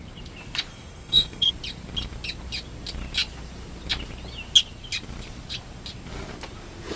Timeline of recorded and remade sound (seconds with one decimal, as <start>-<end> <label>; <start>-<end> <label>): 0.0-0.7 recorded; 0.7-1.5 remade; 1.5-7.0 recorded